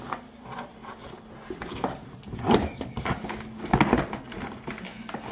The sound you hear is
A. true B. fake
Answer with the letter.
A